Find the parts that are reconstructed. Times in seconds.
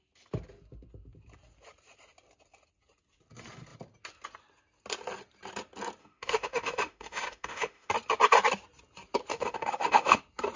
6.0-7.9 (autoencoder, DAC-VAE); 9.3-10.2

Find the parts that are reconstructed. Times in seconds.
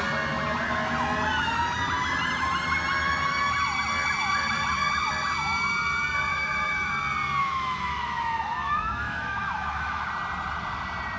6.3-6.9 (autoencoder, DAC-VAE); 7.4-10.1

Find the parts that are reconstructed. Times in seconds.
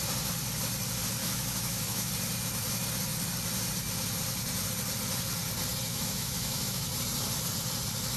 1.2-2.1 (autoencoder, DAC-VAE); 5.9-6.9